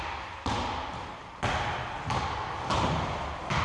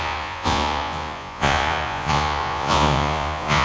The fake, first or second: second